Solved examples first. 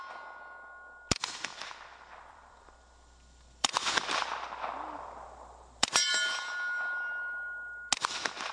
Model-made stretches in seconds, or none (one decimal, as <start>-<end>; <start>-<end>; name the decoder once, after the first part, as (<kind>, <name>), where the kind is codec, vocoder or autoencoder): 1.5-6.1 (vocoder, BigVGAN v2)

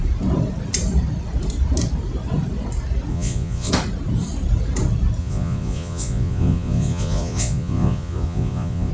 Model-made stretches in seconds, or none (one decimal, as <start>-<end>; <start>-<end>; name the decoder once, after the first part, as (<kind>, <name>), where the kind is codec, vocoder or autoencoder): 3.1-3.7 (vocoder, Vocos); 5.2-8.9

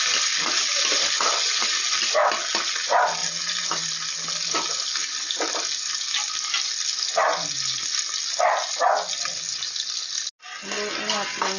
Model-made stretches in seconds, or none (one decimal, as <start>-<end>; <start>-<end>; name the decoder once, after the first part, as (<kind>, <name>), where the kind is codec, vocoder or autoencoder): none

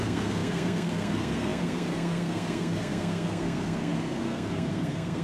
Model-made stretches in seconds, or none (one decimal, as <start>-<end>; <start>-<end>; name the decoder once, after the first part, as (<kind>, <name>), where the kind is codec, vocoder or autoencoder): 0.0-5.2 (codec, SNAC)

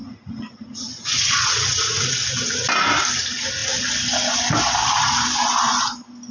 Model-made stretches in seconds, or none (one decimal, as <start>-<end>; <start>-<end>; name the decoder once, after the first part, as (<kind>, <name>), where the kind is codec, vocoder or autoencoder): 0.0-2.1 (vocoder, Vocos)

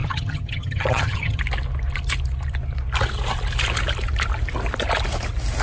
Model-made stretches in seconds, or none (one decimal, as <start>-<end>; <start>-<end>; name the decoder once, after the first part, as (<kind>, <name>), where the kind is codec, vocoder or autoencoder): 0.0-1.4 (vocoder, HiFi-GAN)

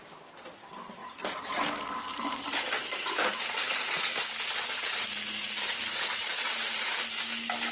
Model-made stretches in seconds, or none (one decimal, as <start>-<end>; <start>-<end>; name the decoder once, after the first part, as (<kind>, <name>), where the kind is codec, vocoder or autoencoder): 1.0-1.6 (vocoder, BigVGAN v2); 2.1-4.5